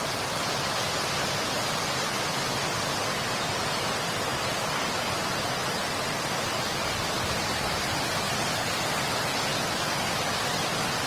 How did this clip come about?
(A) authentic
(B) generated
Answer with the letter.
A